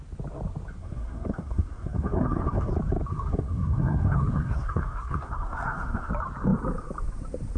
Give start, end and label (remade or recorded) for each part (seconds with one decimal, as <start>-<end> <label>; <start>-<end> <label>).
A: 0.0-0.8 recorded; 0.8-2.7 remade; 2.7-3.1 recorded; 3.1-6.1 remade; 6.1-7.6 recorded